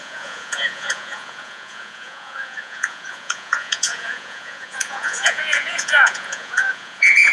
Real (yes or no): no